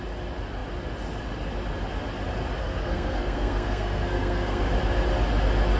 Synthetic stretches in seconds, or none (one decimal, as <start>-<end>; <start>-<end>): 2.6-4.6